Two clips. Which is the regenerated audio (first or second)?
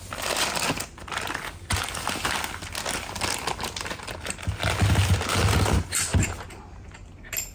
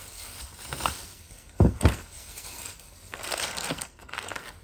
second